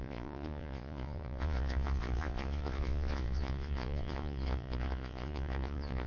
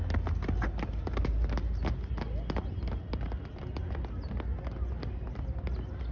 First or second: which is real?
second